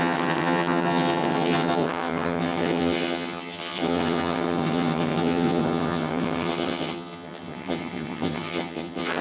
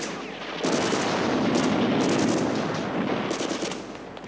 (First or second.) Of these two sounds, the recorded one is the second